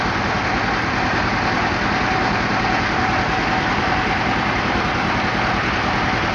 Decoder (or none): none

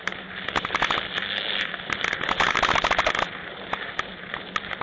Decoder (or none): none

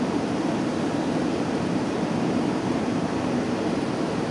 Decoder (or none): vocoder, BigVGAN v2